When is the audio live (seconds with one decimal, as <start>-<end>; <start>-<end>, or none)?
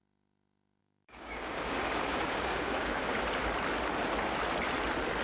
0.0-0.8; 3.2-5.2